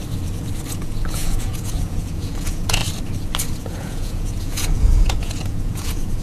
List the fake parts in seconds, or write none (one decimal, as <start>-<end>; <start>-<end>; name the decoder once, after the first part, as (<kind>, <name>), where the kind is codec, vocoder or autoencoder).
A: 0.7-2.8 (vocoder, Vocos); 3.6-6.2